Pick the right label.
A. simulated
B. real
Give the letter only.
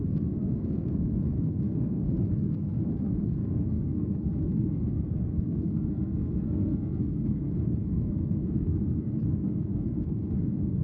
A